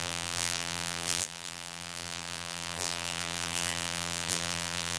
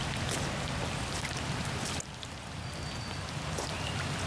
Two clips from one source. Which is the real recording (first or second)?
second